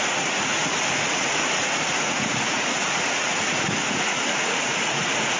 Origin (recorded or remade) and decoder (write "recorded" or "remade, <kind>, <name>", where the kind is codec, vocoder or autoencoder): remade, vocoder, Vocos